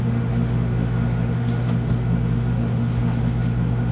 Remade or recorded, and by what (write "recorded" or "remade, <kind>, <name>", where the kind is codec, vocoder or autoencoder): remade, autoencoder, DAC-VAE